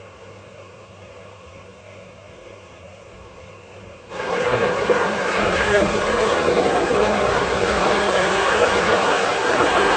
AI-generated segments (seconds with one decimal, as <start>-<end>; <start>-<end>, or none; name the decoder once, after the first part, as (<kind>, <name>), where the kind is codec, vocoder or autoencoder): 0.0-10.0 (codec, SNAC)